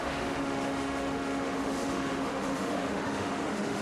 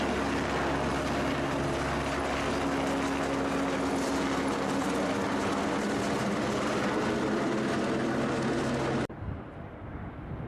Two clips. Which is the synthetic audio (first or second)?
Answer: first